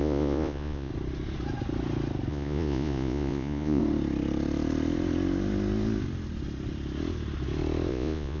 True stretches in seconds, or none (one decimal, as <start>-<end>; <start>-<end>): 0.9-2.3; 3.8-7.9